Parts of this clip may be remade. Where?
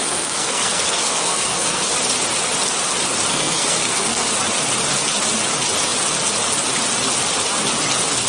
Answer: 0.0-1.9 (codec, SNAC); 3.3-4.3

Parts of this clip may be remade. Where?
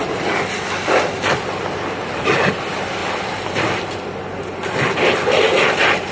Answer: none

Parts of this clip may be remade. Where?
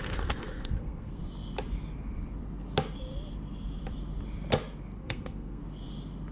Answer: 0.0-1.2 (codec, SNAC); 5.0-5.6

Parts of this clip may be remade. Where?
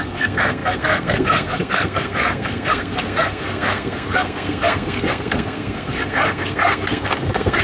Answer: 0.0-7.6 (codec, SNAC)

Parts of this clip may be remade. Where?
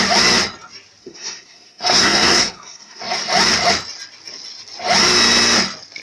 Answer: 1.0-3.0 (codec, SNAC)